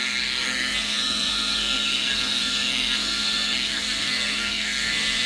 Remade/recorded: remade